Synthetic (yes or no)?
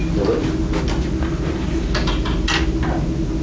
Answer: no